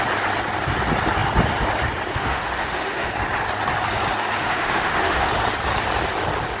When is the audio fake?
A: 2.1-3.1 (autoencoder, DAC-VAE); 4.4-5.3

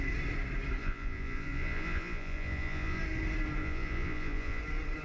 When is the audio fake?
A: 0.8-3.0 (vocoder, Vocos); 3.6-4.6

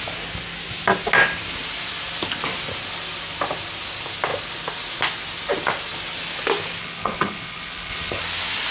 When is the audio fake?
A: 6.8-8.2 (codec, HILCodec)

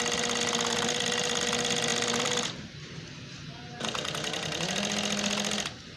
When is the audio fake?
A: 1.9-3.4 (vocoder, BigVGAN v2)

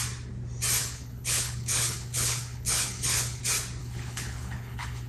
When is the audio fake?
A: 0.8-3.4 (codec, HILCodec); 3.8-5.1